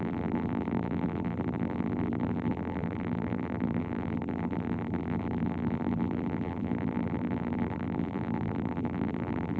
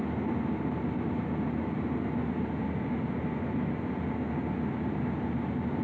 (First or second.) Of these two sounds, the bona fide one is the second